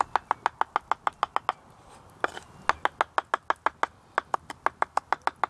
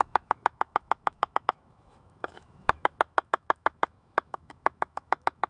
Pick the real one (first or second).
first